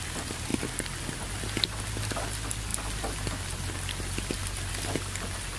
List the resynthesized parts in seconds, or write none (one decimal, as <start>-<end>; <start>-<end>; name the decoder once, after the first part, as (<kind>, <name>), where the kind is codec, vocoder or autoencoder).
none